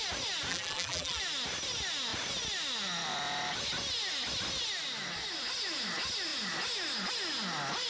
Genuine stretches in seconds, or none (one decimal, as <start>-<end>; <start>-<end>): 0.0-0.5; 1.2-7.9